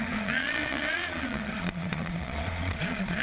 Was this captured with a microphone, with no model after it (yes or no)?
no